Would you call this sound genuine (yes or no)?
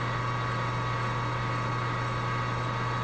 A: yes